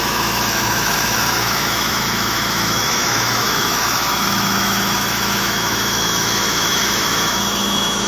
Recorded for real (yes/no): no